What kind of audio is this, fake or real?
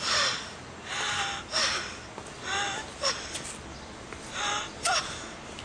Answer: real